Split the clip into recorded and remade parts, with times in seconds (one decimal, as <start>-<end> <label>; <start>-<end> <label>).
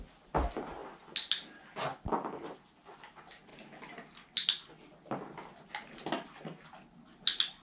0.0-7.6 recorded